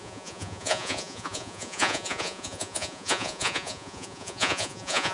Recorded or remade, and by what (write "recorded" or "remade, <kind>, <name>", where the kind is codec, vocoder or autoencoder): remade, vocoder, Vocos